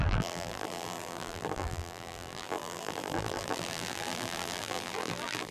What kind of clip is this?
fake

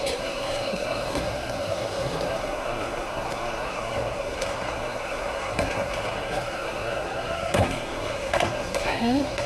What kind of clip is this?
fake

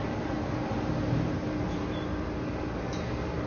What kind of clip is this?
fake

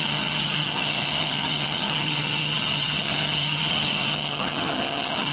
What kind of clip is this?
fake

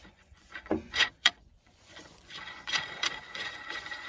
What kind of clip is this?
fake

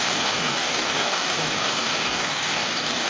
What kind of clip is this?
fake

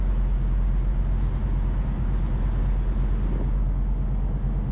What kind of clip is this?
real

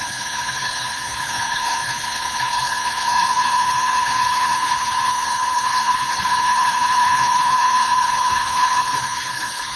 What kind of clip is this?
fake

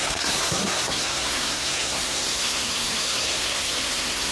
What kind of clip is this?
fake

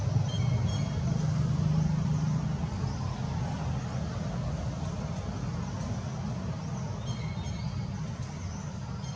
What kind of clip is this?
real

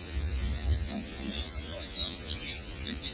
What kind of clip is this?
fake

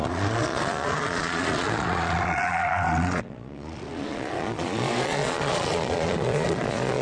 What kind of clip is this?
fake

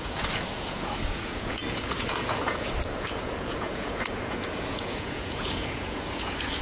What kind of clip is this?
fake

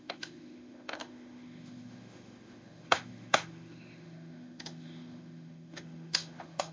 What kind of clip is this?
fake